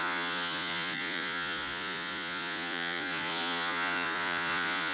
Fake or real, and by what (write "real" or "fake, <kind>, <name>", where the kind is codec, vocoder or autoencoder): fake, vocoder, Vocos